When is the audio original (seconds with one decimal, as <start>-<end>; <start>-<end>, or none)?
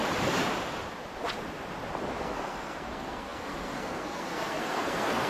0.0-2.2